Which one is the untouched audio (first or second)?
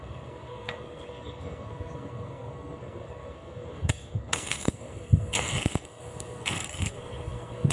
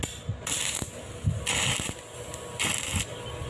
second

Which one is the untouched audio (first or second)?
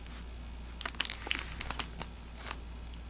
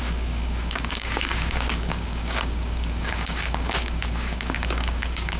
first